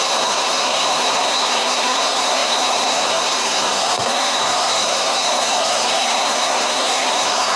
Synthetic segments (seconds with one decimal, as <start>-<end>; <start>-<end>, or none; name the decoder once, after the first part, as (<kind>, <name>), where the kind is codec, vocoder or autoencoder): 0.0-7.6 (codec, SNAC)